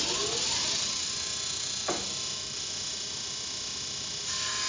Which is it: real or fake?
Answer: real